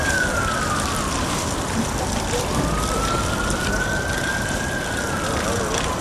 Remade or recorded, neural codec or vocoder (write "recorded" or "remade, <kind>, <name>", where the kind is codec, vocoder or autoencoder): remade, vocoder, BigVGAN v2